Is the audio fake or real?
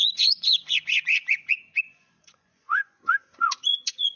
fake